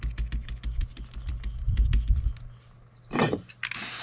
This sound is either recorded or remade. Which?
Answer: recorded